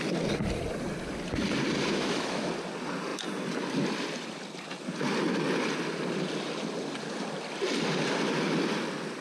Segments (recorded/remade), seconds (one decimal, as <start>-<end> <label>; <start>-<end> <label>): 0.0-1.9 recorded; 1.9-2.5 remade; 2.5-9.2 recorded